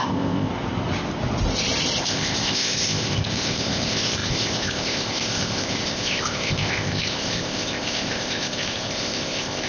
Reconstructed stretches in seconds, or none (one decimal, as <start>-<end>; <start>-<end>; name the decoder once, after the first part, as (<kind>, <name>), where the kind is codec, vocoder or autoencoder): 0.0-0.5 (codec, ZipCodec); 2.0-9.7